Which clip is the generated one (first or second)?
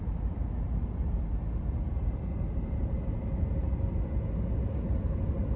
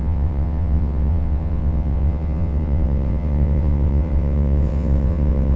second